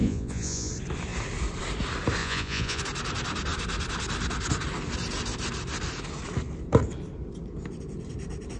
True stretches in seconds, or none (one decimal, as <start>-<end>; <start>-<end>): 0.7-2.2; 2.8-8.6